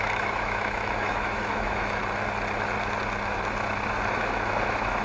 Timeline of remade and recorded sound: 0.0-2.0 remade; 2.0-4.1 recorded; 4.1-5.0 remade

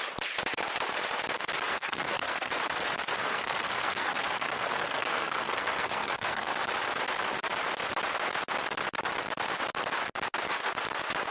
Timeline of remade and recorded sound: 0.0-1.7 recorded; 1.7-2.5 remade; 2.5-3.2 recorded; 3.2-6.5 remade; 6.5-11.3 recorded

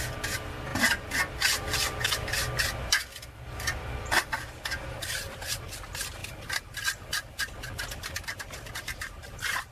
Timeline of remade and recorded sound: 0.0-9.7 recorded

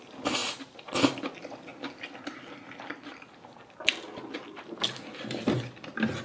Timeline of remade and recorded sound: 0.0-1.7 remade; 1.7-4.4 recorded; 4.4-6.2 remade

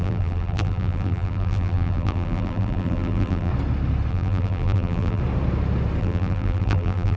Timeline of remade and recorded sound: 0.0-3.5 remade; 3.5-4.1 recorded; 4.1-5.2 remade; 5.2-6.0 recorded; 6.0-7.2 remade